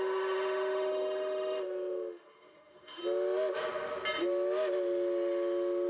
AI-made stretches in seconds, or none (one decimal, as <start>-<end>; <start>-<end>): 0.0-3.0

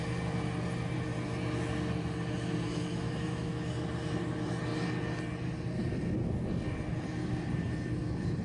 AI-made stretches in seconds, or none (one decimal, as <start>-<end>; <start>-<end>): 2.7-3.7

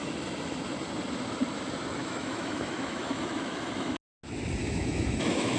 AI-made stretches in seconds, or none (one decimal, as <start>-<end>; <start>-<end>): 2.0-3.9; 4.6-5.6

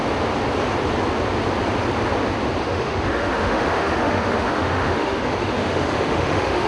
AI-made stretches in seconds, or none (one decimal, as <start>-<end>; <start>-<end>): 2.6-6.7

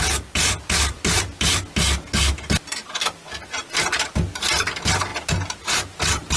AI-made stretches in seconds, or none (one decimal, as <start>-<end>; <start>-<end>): none

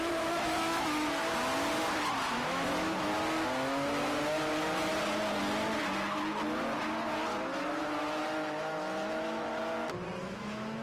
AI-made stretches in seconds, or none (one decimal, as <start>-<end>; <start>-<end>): 0.0-1.3; 2.3-3.1; 7.7-9.5; 10.2-10.8